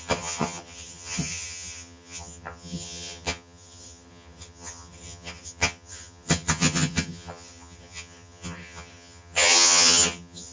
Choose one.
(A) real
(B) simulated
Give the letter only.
B